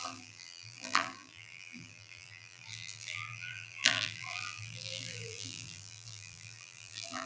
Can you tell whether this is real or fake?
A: fake